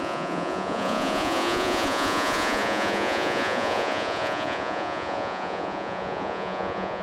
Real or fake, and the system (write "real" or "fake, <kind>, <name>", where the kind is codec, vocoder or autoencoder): fake, vocoder, Vocos